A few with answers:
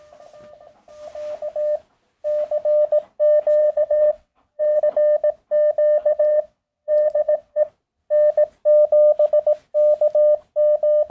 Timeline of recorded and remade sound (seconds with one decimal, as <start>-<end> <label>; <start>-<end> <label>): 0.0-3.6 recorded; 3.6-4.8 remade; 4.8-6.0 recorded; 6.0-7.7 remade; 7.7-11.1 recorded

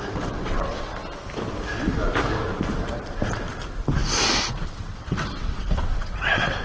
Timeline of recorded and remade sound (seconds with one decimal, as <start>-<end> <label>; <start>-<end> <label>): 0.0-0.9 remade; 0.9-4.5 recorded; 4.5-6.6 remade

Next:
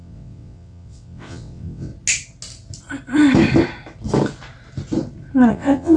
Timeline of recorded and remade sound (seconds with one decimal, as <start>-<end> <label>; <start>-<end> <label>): 0.0-1.9 remade; 1.9-5.5 recorded; 5.5-6.0 remade

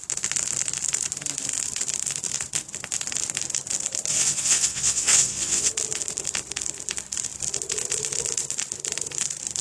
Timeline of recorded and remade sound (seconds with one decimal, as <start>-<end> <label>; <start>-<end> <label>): 0.0-4.1 recorded; 4.1-5.7 remade; 5.7-9.6 recorded

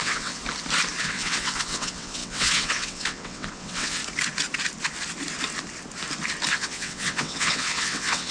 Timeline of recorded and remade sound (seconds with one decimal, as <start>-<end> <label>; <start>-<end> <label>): 0.0-0.4 remade; 0.4-1.0 recorded; 1.0-4.0 remade; 4.0-6.5 recorded; 6.5-8.3 remade